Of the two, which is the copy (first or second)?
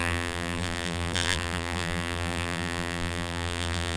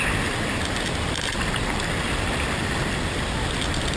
first